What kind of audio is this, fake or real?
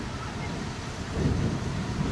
real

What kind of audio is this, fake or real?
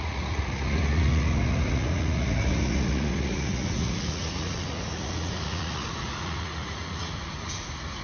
fake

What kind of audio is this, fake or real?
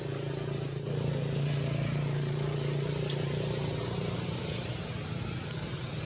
real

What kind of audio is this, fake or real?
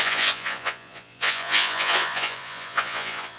fake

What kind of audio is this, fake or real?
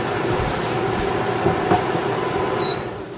fake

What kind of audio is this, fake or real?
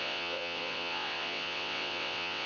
fake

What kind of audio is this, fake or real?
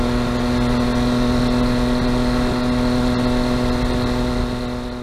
real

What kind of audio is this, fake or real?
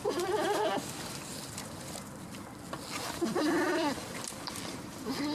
real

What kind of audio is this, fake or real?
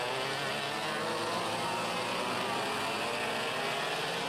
real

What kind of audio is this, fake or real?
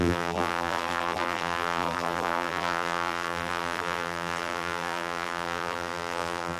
fake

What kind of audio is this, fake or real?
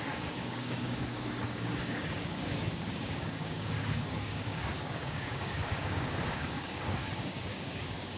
fake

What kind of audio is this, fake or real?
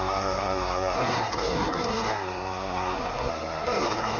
fake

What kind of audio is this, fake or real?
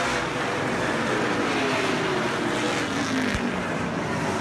real